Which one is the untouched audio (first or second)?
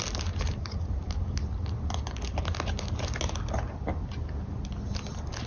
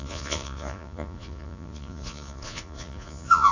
first